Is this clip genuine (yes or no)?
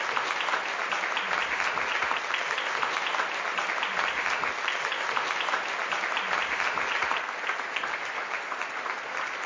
yes